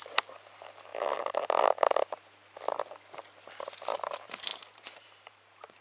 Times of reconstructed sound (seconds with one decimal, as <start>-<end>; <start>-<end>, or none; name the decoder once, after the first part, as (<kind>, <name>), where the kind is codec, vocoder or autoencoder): 0.0-0.9 (vocoder, BigVGAN v2); 4.0-5.8